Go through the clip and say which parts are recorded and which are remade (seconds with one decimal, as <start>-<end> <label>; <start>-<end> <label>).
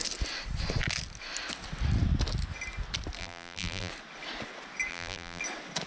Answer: 0.0-3.2 recorded; 3.2-3.9 remade; 3.9-4.9 recorded; 4.9-5.4 remade; 5.4-5.9 recorded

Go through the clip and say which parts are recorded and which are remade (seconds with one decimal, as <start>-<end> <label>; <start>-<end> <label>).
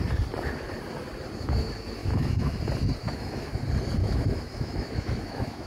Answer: 0.0-2.0 recorded; 2.0-2.6 remade; 2.6-3.0 recorded; 3.0-3.5 remade; 3.5-4.0 recorded; 4.0-5.7 remade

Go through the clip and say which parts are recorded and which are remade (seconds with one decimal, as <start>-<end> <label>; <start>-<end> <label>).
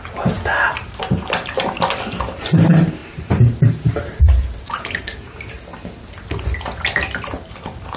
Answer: 0.0-5.1 remade; 5.1-7.3 recorded; 7.3-8.0 remade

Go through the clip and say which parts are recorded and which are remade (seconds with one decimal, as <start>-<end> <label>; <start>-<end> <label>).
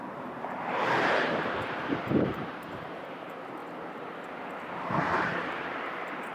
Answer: 0.0-3.6 remade; 3.6-4.7 recorded; 4.7-6.3 remade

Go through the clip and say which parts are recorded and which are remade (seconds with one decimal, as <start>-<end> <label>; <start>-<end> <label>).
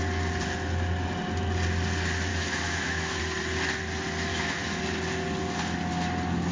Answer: 0.0-2.3 recorded; 2.3-3.2 remade; 3.2-4.3 recorded; 4.3-4.8 remade; 4.8-6.5 recorded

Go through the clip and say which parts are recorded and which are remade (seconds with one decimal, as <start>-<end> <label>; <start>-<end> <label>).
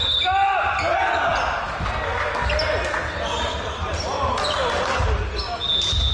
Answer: 0.0-6.1 recorded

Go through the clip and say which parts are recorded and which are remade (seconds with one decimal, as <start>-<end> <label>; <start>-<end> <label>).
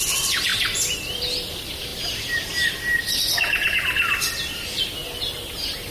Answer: 0.0-5.9 recorded